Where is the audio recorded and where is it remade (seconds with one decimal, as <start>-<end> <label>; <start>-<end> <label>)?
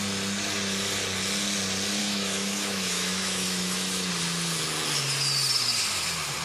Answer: 0.0-2.0 recorded; 2.0-4.1 remade; 4.1-6.4 recorded